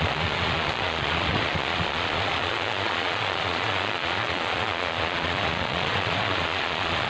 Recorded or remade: remade